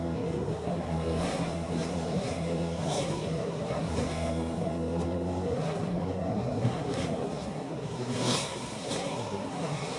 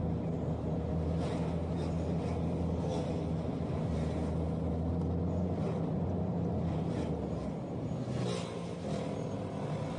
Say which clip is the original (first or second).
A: second